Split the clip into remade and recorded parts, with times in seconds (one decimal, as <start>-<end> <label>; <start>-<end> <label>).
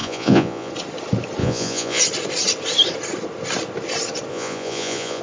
0.0-0.7 remade; 0.7-1.4 recorded; 1.4-2.0 remade; 2.0-4.3 recorded; 4.3-5.2 remade